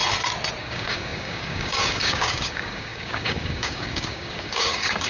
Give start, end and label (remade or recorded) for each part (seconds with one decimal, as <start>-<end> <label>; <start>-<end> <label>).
0.0-0.6 recorded; 0.6-5.1 remade